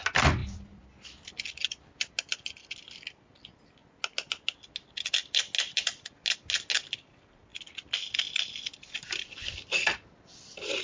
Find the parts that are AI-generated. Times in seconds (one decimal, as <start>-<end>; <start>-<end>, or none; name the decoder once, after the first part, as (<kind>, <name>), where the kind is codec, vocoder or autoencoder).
none